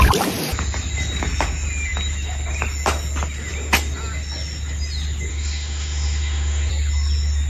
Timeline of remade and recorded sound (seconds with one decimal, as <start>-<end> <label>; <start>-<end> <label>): 0.0-5.3 recorded; 5.3-6.7 remade; 6.7-7.5 recorded